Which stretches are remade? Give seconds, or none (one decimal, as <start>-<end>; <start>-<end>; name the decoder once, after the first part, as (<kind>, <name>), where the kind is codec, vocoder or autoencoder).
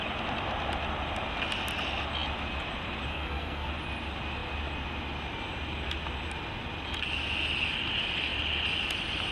3.1-3.7 (codec, SNAC)